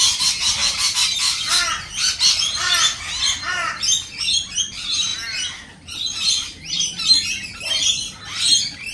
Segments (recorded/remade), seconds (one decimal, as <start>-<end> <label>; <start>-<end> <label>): 0.0-8.9 recorded